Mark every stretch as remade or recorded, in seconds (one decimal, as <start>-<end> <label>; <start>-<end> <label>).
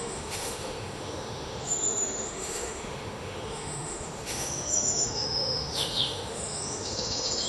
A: 0.0-7.5 remade